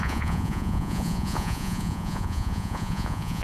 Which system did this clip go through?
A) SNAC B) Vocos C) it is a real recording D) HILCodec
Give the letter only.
B